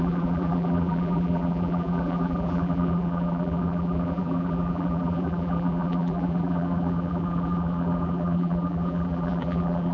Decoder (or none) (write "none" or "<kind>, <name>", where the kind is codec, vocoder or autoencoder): vocoder, BigVGAN v2